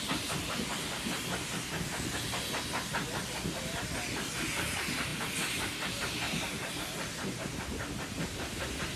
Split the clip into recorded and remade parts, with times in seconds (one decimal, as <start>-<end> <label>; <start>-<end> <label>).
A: 0.0-5.1 recorded; 5.1-6.7 remade; 6.7-9.0 recorded